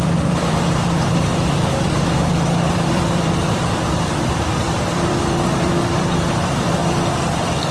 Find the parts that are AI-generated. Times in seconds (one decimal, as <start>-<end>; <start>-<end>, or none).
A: 0.0-6.8